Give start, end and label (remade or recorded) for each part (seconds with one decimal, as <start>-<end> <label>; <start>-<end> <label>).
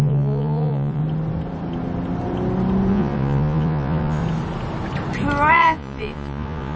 0.0-1.0 remade; 1.0-2.9 recorded; 2.9-4.2 remade; 4.2-5.5 recorded; 5.5-6.8 remade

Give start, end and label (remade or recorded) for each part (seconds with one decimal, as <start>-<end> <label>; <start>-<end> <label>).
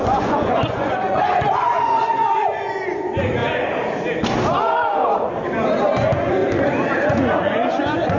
0.0-3.4 remade; 3.4-5.8 recorded; 5.8-6.4 remade; 6.4-7.1 recorded; 7.1-8.2 remade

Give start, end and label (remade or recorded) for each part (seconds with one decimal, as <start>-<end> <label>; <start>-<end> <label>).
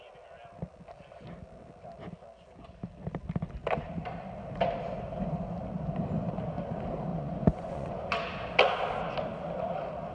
0.0-7.1 recorded; 7.1-7.9 remade; 7.9-10.1 recorded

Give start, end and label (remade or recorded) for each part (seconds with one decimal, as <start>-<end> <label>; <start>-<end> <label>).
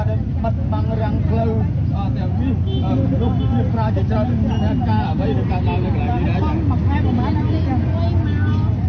0.0-8.9 recorded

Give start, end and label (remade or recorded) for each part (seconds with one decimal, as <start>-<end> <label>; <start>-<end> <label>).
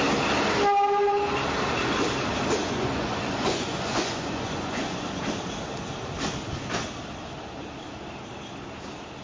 0.0-2.6 recorded; 2.6-5.2 remade; 5.2-9.2 recorded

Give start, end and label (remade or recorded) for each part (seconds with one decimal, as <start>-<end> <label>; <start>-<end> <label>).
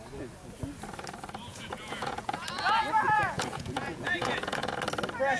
0.0-1.5 recorded; 1.5-4.7 remade; 4.7-5.4 recorded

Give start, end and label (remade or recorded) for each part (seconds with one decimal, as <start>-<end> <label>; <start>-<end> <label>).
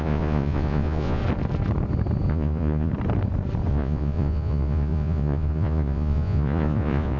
0.0-1.2 remade; 1.2-2.3 recorded; 2.3-2.9 remade; 2.9-3.7 recorded; 3.7-7.2 remade